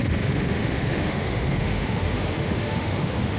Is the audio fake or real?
fake